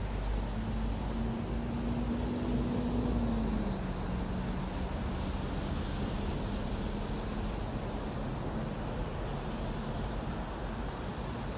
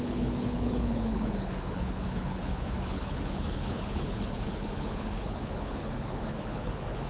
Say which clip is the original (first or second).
first